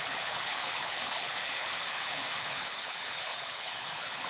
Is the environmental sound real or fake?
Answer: fake